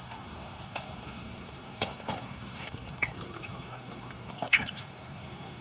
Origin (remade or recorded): remade